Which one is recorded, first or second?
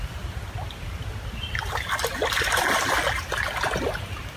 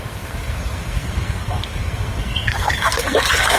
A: first